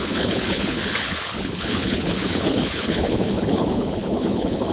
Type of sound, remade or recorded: remade